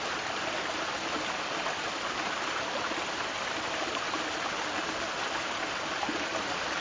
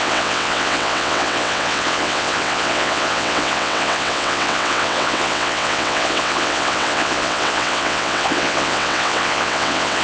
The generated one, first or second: second